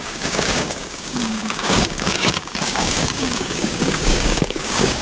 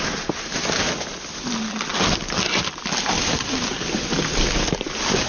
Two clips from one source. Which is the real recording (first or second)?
second